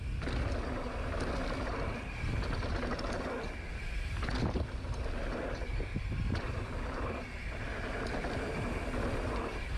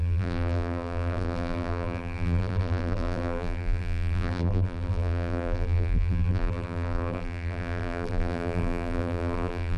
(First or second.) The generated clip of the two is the second